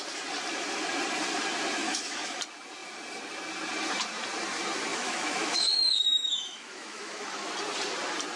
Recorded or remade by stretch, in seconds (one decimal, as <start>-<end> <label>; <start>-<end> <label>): 0.0-1.8 recorded; 1.8-2.4 remade; 2.4-4.9 recorded; 4.9-7.5 remade; 7.5-8.4 recorded